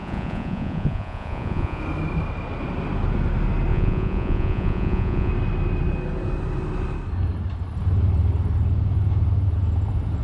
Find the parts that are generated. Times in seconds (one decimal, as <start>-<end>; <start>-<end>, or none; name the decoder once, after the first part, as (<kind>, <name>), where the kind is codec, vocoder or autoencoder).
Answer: 0.0-1.8 (vocoder, Vocos); 3.7-5.3